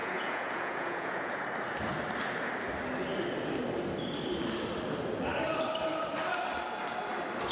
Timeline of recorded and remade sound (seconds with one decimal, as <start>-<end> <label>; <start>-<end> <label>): 0.0-1.3 remade; 1.3-7.5 recorded